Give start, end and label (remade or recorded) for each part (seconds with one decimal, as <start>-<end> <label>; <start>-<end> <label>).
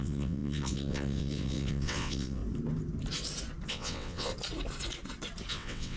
0.0-2.4 remade; 2.4-3.7 recorded; 3.7-4.3 remade; 4.3-5.5 recorded; 5.5-6.0 remade